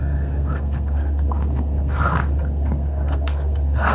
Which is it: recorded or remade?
remade